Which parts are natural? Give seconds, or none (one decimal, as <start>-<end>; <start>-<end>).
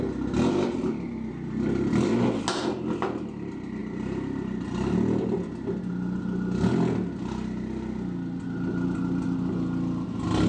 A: 0.0-10.5